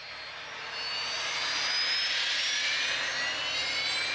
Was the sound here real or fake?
real